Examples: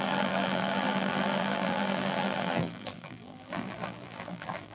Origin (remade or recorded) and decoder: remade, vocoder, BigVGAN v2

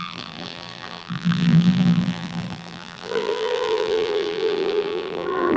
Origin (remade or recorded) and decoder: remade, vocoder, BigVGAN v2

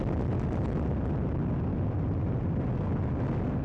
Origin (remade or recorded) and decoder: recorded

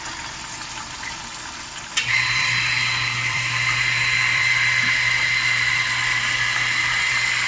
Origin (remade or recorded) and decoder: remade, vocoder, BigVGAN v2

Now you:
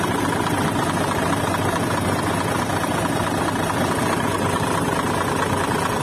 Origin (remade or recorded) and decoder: recorded